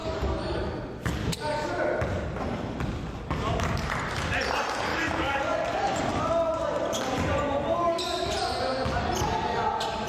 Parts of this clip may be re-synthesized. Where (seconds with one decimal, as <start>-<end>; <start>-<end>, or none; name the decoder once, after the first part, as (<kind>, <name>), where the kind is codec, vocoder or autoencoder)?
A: 0.0-0.6 (codec, DAC); 1.2-1.7; 4.9-5.4